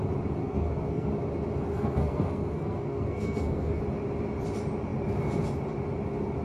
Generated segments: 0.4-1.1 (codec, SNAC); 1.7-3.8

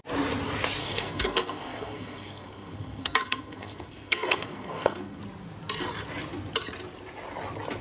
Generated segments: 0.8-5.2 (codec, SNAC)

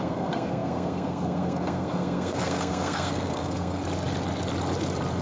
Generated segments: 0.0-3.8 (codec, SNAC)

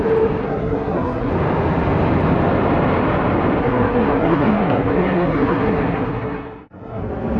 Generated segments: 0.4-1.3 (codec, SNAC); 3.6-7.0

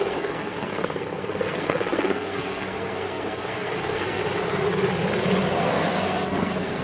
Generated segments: 0.0-4.2 (codec, SNAC); 5.5-6.8